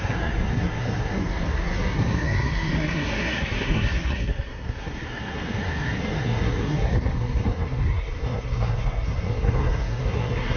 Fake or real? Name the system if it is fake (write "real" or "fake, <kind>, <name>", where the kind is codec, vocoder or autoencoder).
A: fake, codec, SNAC